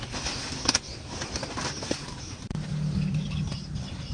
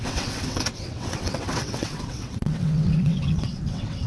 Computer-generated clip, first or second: second